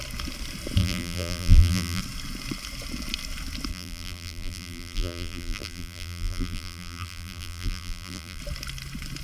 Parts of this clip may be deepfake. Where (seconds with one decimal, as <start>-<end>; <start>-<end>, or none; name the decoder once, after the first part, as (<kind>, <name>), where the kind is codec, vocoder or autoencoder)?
0.8-2.0 (vocoder, BigVGAN v2); 3.7-8.4